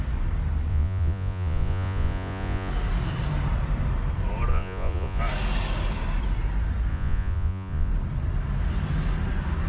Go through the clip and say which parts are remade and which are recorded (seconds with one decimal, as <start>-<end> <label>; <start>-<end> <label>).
0.0-0.7 recorded; 0.7-2.7 remade; 2.7-4.5 recorded; 4.5-5.2 remade; 5.2-6.9 recorded; 6.9-7.9 remade; 7.9-9.7 recorded